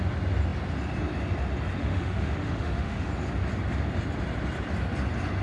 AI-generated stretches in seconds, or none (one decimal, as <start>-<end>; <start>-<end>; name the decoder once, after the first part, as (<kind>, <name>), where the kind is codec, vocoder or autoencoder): 1.8-3.1 (autoencoder, DAC-VAE)